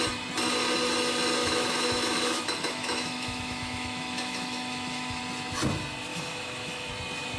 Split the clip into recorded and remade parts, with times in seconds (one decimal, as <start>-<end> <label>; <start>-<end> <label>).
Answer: 0.0-1.4 recorded; 1.4-5.2 remade; 5.2-6.1 recorded; 6.1-6.9 remade; 6.9-7.4 recorded